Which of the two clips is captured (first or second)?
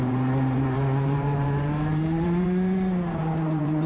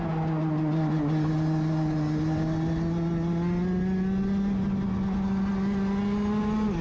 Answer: second